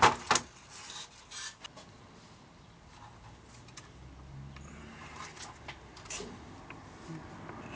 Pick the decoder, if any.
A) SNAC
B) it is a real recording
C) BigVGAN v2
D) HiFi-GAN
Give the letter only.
B